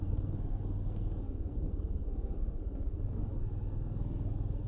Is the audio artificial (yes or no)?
yes